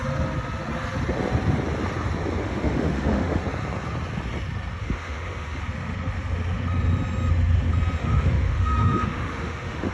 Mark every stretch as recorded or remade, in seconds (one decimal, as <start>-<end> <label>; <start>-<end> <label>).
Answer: 0.0-2.4 recorded; 2.4-3.4 remade; 3.4-4.8 recorded; 4.8-5.6 remade; 5.6-8.0 recorded; 8.0-9.9 remade